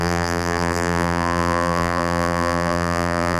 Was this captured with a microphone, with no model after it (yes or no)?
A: no